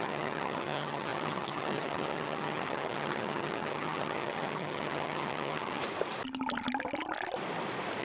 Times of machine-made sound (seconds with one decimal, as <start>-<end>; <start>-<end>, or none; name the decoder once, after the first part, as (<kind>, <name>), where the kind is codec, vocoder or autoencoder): 0.0-5.8 (vocoder, HiFi-GAN)